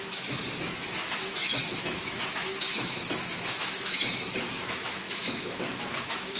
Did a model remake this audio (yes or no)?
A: yes